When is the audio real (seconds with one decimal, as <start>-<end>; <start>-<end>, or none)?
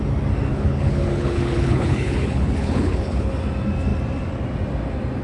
0.0-0.5; 3.3-5.2